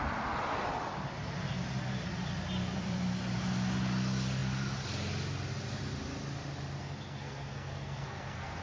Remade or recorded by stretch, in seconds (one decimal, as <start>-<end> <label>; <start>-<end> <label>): 0.0-6.8 recorded; 6.8-8.6 remade